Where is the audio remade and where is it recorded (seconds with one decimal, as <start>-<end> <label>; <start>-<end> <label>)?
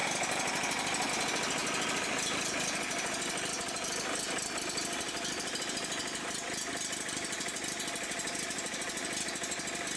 0.0-1.6 recorded; 1.6-5.6 remade; 5.6-6.0 recorded; 6.0-9.3 remade; 9.3-10.0 recorded